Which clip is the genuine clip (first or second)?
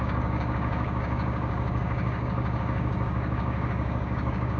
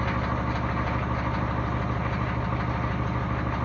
second